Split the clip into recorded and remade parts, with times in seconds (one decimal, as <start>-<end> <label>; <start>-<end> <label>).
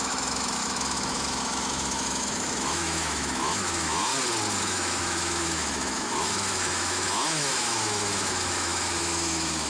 0.0-4.1 remade; 4.1-4.6 recorded; 4.6-9.7 remade